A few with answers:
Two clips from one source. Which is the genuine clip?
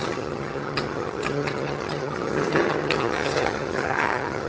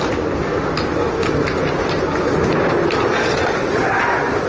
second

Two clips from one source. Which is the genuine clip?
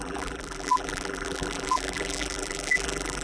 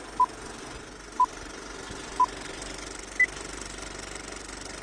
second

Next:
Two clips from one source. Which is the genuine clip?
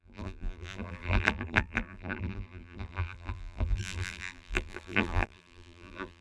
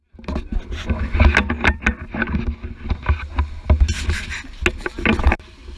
second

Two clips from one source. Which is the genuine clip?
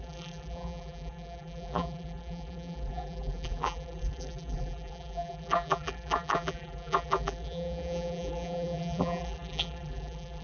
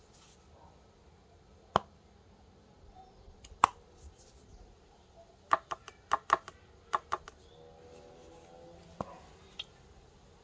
second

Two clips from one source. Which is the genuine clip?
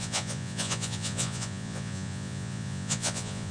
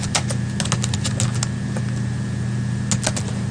second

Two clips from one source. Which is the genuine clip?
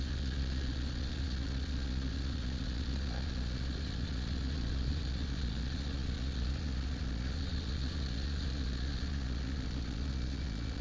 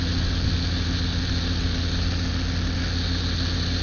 second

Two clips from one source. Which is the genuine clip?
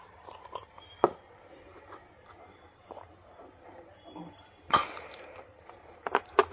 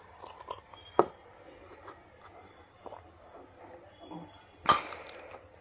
second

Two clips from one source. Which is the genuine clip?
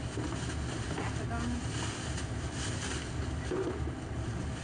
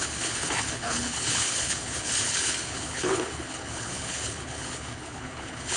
first